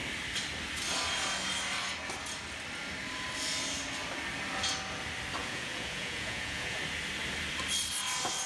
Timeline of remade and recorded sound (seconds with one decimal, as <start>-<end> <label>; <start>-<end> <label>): 0.0-5.4 recorded; 5.4-6.8 remade; 6.8-8.5 recorded